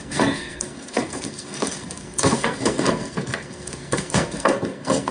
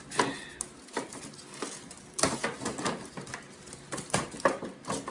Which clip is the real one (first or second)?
second